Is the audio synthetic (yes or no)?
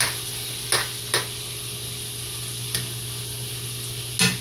no